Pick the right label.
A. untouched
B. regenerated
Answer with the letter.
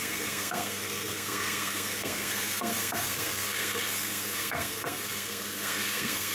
B